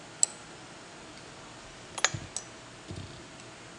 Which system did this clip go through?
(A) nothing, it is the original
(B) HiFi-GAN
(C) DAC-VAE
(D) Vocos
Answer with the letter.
A